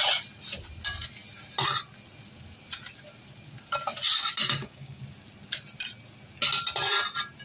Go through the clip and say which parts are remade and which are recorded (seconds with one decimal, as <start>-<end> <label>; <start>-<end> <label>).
0.0-4.4 recorded; 4.4-5.0 remade; 5.0-7.4 recorded

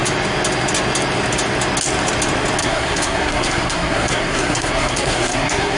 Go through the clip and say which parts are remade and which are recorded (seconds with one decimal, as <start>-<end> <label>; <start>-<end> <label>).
0.0-2.6 recorded; 2.6-5.8 remade